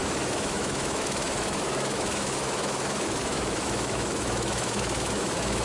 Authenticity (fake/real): fake